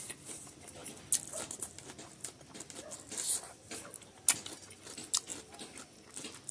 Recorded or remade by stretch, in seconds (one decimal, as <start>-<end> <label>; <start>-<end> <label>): 0.0-6.5 recorded